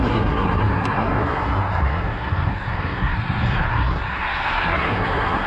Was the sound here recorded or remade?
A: remade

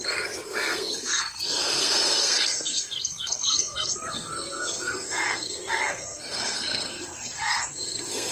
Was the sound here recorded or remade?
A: remade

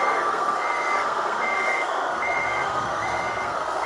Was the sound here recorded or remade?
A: remade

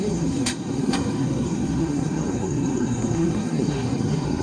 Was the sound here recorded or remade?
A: remade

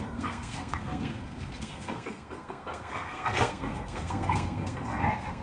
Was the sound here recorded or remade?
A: remade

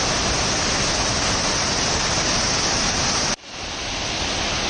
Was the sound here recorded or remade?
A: recorded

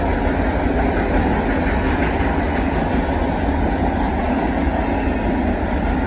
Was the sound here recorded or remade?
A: recorded